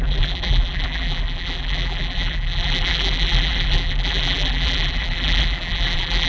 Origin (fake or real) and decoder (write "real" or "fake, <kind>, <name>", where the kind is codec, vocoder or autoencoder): fake, vocoder, BigVGAN v2